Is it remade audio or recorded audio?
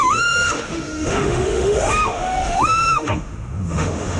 remade